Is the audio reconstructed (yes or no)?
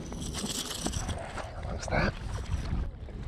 no